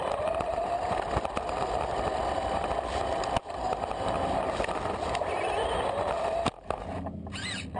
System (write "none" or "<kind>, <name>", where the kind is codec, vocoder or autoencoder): none